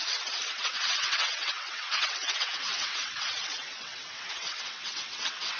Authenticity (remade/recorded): remade